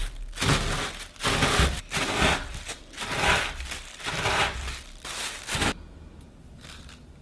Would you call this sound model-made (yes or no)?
no